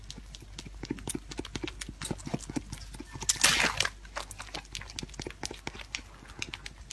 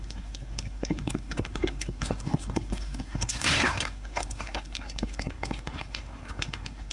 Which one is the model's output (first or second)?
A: second